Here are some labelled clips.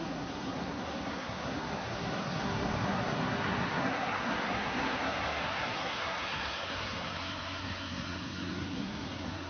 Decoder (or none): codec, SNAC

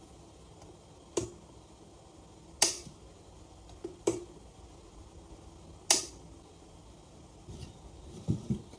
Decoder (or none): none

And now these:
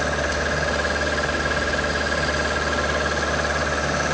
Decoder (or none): none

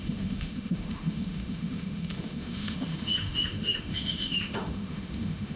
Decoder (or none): autoencoder, DAC-VAE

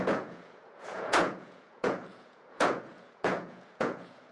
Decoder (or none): vocoder, Vocos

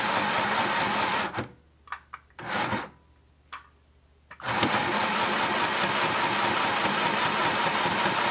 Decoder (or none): none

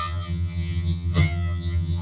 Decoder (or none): vocoder, HiFi-GAN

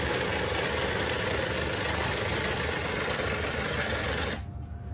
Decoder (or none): none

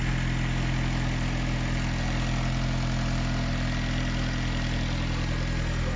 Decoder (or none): none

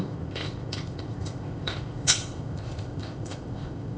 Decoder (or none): codec, ZipCodec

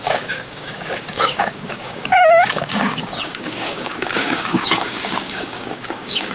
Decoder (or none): codec, DAC